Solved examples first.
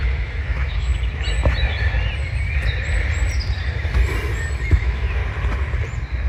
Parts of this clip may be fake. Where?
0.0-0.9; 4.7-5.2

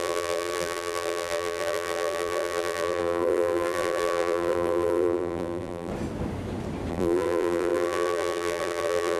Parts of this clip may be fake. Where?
0.0-5.9; 6.9-9.2